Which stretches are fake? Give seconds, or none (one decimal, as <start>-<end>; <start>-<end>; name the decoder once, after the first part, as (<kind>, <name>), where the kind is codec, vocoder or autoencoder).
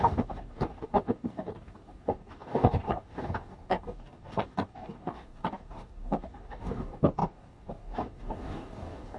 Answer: 0.0-9.2 (codec, DAC)